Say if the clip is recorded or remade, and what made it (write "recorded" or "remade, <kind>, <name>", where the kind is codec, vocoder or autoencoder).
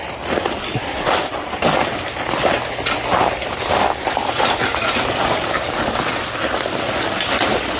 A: recorded